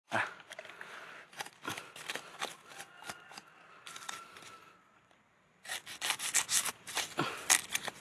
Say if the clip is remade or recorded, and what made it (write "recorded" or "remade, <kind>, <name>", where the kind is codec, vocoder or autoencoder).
recorded